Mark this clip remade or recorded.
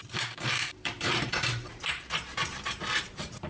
remade